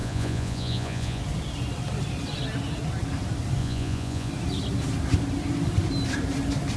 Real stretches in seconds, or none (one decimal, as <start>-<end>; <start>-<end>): 1.2-3.6; 4.3-6.8